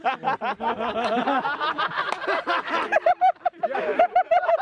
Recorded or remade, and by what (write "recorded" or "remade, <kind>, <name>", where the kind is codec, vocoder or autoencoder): recorded